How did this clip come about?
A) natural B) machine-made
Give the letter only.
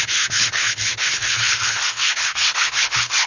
B